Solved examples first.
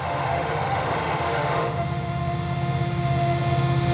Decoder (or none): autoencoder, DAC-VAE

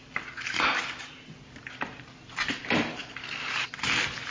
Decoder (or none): none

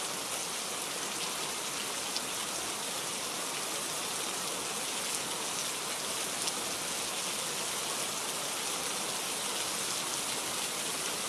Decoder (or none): none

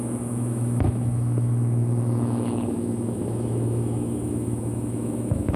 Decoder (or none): autoencoder, DAC-VAE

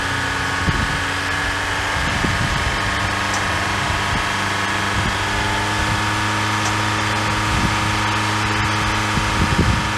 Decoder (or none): none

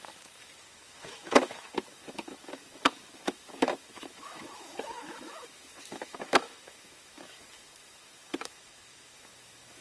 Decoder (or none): autoencoder, DAC-VAE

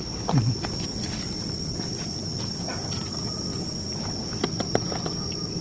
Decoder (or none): none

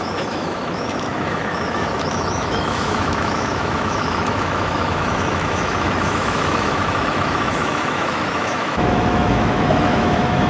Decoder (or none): autoencoder, DAC-VAE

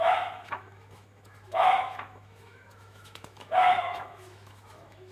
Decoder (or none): autoencoder, DAC-VAE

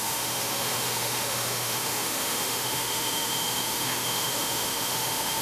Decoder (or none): autoencoder, DAC-VAE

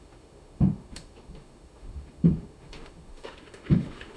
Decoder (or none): autoencoder, DAC-VAE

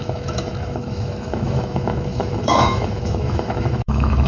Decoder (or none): autoencoder, DAC-VAE